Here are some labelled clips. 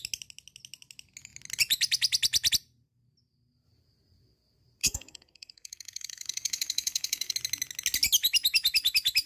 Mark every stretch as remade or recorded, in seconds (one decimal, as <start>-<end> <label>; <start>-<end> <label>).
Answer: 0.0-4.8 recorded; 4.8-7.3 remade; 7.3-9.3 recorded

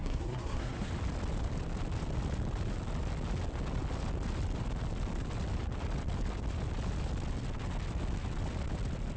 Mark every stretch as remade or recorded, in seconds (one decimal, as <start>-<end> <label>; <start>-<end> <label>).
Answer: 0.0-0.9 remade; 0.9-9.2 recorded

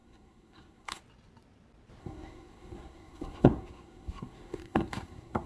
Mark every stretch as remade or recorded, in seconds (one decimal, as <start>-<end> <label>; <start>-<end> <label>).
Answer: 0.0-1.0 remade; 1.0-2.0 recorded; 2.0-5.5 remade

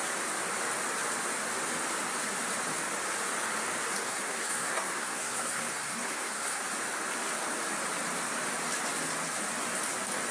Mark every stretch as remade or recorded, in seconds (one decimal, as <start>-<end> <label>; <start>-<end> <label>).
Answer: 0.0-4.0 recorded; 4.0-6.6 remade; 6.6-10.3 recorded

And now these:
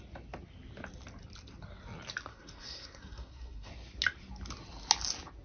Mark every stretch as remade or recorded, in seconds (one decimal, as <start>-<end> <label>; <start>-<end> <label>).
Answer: 0.0-2.3 recorded; 2.3-3.7 remade; 3.7-5.4 recorded